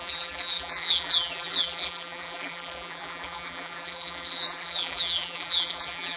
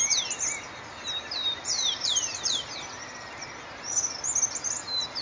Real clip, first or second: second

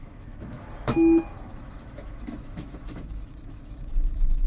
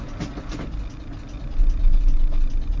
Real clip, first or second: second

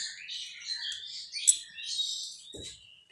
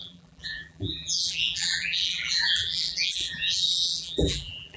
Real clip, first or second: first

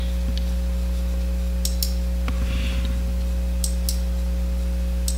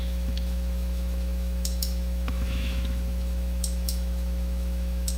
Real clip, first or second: first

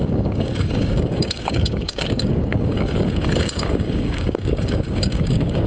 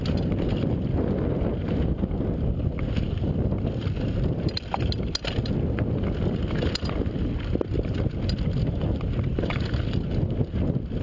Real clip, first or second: second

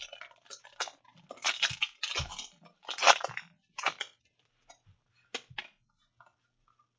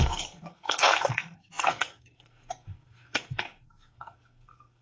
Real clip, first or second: first